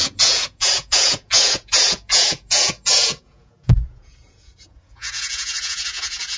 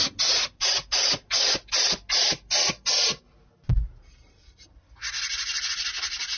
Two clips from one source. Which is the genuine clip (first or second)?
second